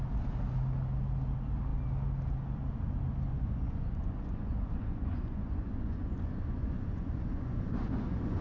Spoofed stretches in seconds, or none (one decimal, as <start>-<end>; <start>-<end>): 3.3-8.4